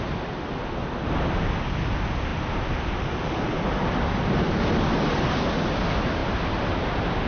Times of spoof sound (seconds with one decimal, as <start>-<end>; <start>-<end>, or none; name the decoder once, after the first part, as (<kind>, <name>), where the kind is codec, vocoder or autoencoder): none

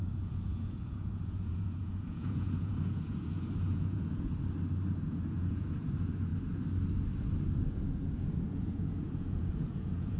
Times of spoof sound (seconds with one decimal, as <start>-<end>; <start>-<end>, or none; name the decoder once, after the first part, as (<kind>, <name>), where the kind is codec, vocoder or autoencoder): 0.0-4.3 (vocoder, Vocos); 5.0-6.3; 7.6-10.2

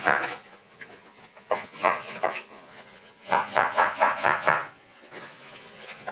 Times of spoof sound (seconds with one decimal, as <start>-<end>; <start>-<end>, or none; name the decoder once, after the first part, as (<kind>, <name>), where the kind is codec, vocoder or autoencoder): 0.0-6.1 (vocoder, Vocos)

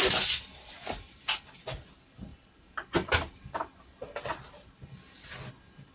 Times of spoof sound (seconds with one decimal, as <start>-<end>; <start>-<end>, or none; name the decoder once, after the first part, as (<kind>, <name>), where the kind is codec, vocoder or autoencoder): none

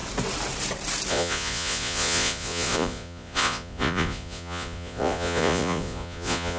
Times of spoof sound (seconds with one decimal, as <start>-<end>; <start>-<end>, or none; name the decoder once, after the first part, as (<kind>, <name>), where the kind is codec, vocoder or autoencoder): 1.1-6.6 (vocoder, Vocos)

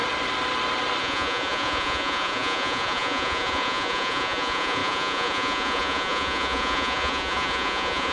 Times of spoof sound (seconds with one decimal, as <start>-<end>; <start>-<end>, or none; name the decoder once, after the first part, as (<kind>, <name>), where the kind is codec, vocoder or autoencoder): 1.0-8.1 (vocoder, Vocos)

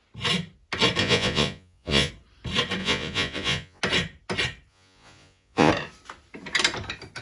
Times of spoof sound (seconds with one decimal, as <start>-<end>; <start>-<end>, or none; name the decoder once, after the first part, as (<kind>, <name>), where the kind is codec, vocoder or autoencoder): 1.0-2.1 (vocoder, Vocos); 2.8-3.8; 4.7-5.7

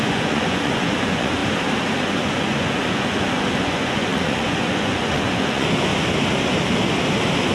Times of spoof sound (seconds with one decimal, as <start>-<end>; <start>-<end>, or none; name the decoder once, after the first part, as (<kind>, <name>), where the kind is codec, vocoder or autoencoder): 0.0-1.4 (vocoder, Vocos); 2.0-5.9